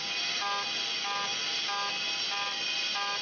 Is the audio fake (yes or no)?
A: no